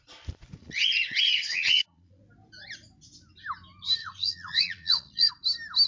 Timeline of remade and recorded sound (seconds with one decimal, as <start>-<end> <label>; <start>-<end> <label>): 0.0-0.6 recorded; 0.6-2.2 remade; 2.2-4.0 recorded; 4.0-5.3 remade; 5.3-5.9 recorded